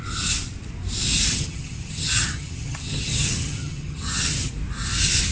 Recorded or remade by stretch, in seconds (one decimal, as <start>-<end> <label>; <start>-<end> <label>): 0.0-1.3 recorded; 1.3-4.5 remade; 4.5-5.3 recorded